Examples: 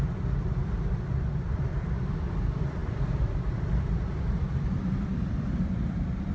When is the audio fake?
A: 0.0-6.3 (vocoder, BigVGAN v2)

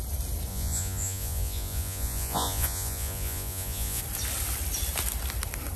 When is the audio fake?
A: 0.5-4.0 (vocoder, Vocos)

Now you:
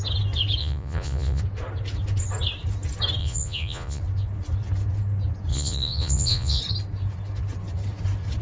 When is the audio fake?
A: 0.6-1.4 (vocoder, Vocos); 3.2-4.0; 5.5-6.6

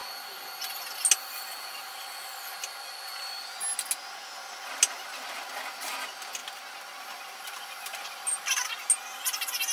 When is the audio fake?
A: none